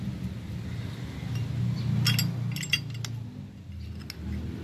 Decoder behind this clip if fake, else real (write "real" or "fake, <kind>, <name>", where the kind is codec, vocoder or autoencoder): real